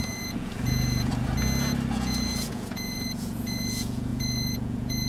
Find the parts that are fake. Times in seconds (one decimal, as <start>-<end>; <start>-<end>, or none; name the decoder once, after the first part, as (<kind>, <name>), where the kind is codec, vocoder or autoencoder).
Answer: 0.0-1.1 (vocoder, Vocos); 1.9-5.1